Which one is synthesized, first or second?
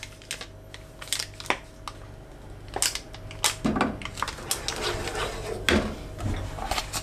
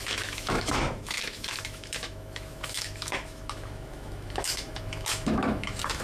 second